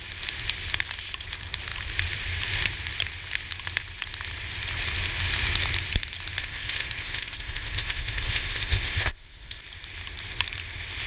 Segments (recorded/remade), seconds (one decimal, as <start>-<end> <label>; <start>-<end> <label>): 0.0-6.4 recorded; 6.4-9.6 remade; 9.6-11.1 recorded